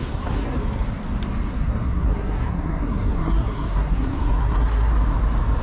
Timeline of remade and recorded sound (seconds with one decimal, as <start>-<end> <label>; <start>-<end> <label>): 0.0-0.6 remade; 0.6-1.5 recorded; 1.5-4.9 remade; 4.9-5.6 recorded

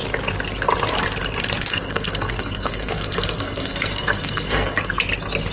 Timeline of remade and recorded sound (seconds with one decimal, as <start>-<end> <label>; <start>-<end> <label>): 0.0-1.7 recorded; 1.7-5.0 remade; 5.0-5.5 recorded

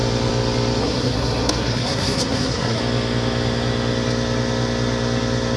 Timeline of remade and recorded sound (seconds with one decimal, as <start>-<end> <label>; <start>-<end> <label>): 0.0-0.8 recorded; 0.8-2.8 remade; 2.8-5.6 recorded

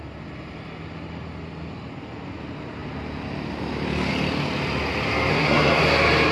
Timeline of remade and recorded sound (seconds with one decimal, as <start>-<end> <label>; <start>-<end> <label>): 0.0-5.3 recorded; 5.3-5.8 remade; 5.8-6.3 recorded